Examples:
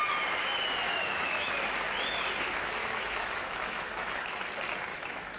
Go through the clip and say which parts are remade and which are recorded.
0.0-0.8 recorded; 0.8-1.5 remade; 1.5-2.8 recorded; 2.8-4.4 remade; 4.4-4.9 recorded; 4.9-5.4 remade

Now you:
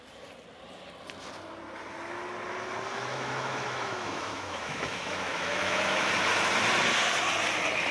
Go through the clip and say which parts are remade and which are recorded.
0.0-2.9 recorded; 2.9-6.1 remade; 6.1-7.9 recorded

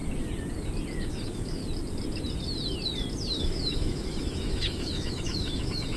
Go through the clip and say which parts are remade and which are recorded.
0.0-1.1 recorded; 1.1-1.6 remade; 1.6-3.4 recorded; 3.4-6.0 remade

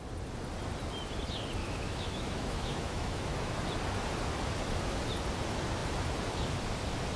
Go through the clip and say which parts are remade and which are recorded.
0.0-1.6 recorded; 1.6-3.6 remade; 3.6-7.2 recorded

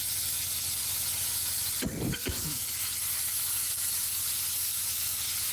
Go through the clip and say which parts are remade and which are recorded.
0.0-0.8 recorded; 0.8-1.6 remade; 1.6-2.1 recorded; 2.1-5.5 remade

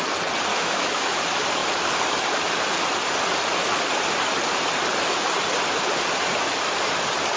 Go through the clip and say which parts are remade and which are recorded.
0.0-0.5 recorded; 0.5-1.2 remade; 1.2-7.4 recorded

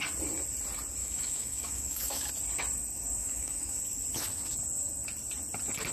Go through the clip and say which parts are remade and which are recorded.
0.0-1.0 recorded; 1.0-2.3 remade; 2.3-3.2 recorded; 3.2-3.8 remade; 3.8-5.9 recorded